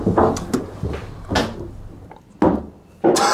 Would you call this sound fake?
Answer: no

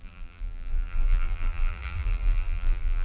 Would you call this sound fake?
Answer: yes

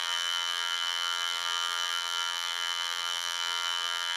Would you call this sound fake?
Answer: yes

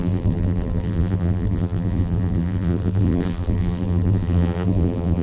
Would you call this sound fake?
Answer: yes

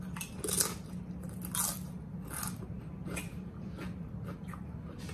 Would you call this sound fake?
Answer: no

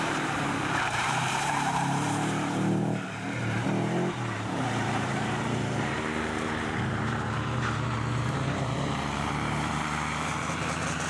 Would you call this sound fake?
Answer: yes